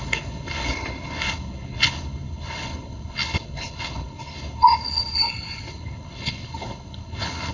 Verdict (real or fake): fake